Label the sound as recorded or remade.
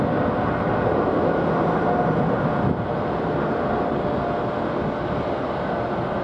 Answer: recorded